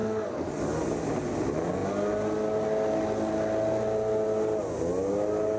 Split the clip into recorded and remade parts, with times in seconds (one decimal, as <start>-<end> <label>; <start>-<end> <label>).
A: 0.0-0.6 remade; 0.6-5.6 recorded

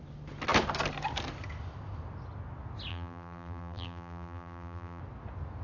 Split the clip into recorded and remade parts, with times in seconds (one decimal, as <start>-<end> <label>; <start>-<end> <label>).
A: 0.0-2.9 recorded; 2.9-5.0 remade; 5.0-5.6 recorded

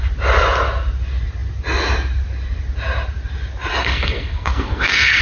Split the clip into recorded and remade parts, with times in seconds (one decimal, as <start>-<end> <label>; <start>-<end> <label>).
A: 0.0-3.8 recorded; 3.8-5.2 remade

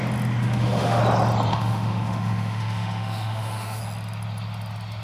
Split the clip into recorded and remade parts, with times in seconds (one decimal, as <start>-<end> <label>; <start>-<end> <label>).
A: 0.0-0.4 recorded; 0.4-1.0 remade; 1.0-1.5 recorded; 1.5-3.8 remade; 3.8-5.0 recorded

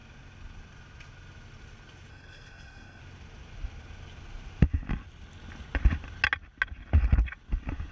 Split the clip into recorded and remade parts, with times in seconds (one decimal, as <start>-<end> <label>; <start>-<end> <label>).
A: 0.0-2.1 recorded; 2.1-3.0 remade; 3.0-7.9 recorded

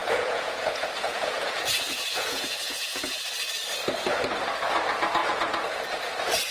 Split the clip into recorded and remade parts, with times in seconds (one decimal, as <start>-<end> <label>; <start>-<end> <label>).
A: 0.0-3.2 remade; 3.2-5.2 recorded; 5.2-5.8 remade; 5.8-6.5 recorded